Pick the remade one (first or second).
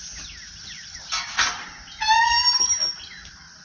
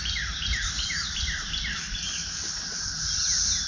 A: second